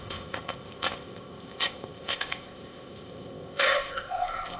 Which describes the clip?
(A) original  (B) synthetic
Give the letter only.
B